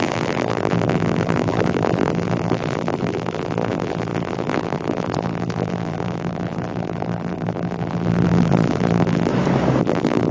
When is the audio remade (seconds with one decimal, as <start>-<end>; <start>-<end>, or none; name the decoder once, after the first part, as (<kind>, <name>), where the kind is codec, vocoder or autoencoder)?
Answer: 0.0-9.3 (vocoder, BigVGAN v2); 9.8-10.3